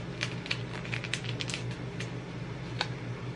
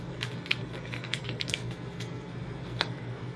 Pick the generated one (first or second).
second